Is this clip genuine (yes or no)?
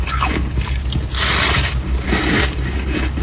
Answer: yes